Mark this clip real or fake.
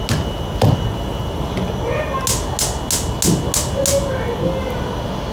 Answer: real